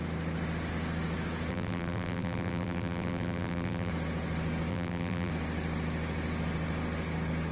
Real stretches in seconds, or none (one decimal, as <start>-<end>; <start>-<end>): 0.0-1.5; 3.9-4.7; 5.3-7.5